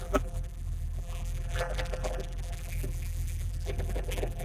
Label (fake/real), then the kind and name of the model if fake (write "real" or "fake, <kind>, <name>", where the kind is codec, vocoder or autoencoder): fake, vocoder, BigVGAN v2